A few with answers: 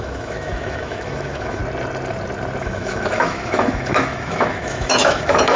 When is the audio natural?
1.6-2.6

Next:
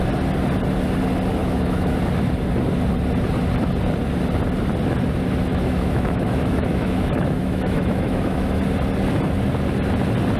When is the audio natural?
0.0-1.4; 2.0-5.5; 8.6-10.4